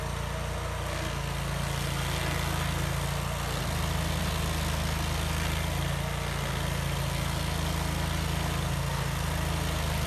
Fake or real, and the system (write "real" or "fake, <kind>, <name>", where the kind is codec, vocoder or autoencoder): real